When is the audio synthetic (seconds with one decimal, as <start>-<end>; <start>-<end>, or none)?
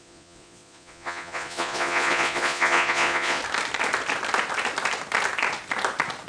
0.0-3.4